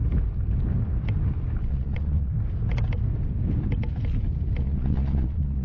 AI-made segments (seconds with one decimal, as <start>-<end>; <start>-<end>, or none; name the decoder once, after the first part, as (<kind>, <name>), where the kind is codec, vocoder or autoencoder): 1.6-2.3 (vocoder, Vocos); 4.6-5.6